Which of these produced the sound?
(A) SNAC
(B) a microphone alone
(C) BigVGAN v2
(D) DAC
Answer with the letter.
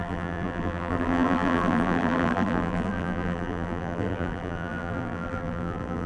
C